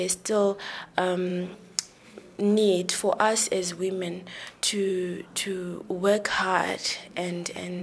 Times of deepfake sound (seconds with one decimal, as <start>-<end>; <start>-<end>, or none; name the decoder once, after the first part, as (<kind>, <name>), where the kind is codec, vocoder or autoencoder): 6.6-7.8 (autoencoder, DAC-VAE)